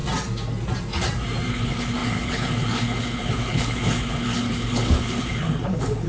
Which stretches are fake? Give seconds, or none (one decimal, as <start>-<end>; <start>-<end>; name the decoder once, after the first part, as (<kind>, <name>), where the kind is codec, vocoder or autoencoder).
1.5-6.1 (codec, HILCodec)